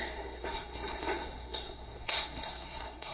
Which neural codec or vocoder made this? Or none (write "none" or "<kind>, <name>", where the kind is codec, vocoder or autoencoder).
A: codec, SNAC